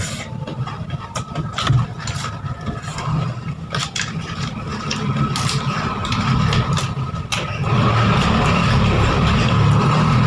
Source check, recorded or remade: remade